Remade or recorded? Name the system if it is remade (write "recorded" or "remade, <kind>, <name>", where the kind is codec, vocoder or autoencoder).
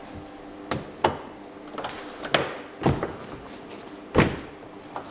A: recorded